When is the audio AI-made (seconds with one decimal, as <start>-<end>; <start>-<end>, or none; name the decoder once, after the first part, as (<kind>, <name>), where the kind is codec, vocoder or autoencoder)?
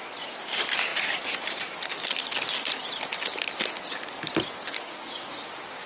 4.6-5.5 (codec, DAC)